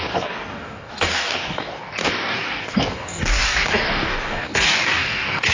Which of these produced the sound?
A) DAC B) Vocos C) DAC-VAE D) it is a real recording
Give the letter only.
A